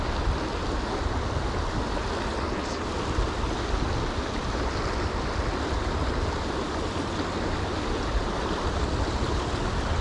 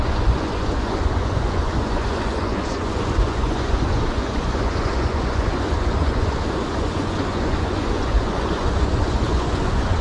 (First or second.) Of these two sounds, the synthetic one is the second